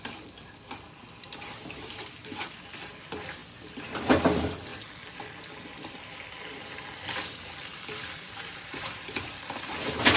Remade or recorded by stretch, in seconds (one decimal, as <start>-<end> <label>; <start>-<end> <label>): 0.0-7.7 recorded; 7.7-10.2 remade